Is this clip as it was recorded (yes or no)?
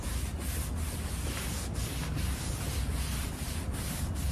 yes